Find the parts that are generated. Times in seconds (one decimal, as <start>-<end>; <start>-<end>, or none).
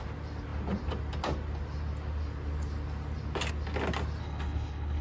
4.2-5.0